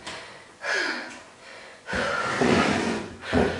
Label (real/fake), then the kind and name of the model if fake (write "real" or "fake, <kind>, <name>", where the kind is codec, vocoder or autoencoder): fake, vocoder, Vocos